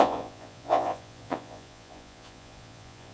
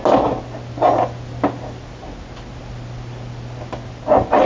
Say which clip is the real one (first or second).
second